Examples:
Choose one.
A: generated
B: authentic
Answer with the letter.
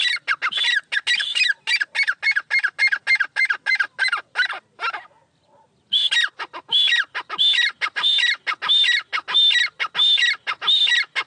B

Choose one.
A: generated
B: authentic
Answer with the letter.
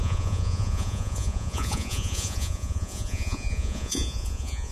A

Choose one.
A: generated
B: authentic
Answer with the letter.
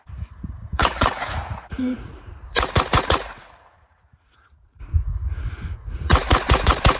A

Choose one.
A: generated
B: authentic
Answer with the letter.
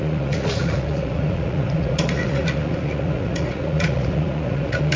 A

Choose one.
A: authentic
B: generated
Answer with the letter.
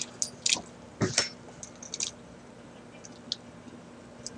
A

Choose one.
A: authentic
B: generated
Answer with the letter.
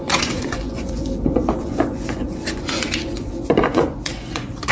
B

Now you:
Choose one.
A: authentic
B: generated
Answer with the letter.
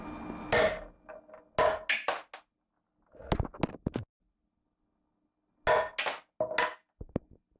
A